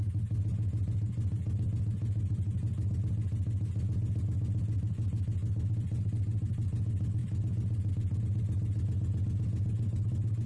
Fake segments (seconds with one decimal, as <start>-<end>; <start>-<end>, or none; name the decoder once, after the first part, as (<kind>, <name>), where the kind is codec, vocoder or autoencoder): none